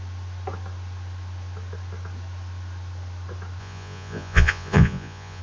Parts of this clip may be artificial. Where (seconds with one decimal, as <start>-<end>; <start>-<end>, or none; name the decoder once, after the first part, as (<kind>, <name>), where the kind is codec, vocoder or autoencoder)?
3.6-5.4 (vocoder, Vocos)